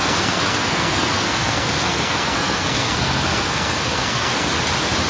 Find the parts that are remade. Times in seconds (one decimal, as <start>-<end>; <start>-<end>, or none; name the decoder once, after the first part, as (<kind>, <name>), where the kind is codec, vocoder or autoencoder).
0.0-4.5 (codec, SNAC)